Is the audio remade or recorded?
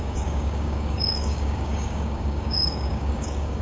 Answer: remade